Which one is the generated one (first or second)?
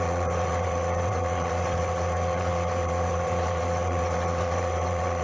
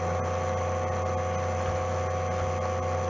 first